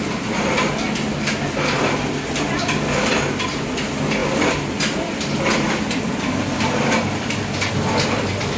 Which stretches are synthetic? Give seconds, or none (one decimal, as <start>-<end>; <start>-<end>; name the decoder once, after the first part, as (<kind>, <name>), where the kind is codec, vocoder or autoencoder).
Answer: none